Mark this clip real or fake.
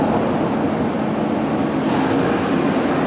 real